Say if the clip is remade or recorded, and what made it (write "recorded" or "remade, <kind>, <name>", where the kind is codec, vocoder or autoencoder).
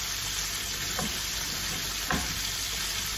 recorded